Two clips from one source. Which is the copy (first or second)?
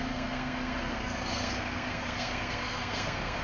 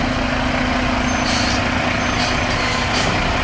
first